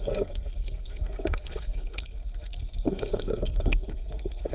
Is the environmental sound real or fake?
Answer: fake